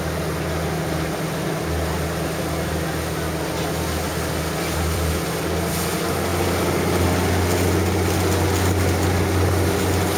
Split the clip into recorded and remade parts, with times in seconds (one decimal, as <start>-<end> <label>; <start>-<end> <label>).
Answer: 0.0-4.1 recorded; 4.1-5.1 remade; 5.1-10.2 recorded